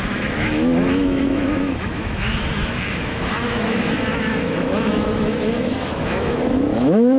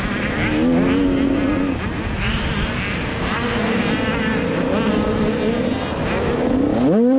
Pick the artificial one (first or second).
first